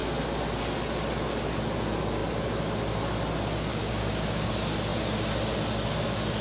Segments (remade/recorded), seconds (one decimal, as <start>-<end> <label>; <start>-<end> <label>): 0.0-3.7 recorded; 3.7-4.5 remade; 4.5-6.4 recorded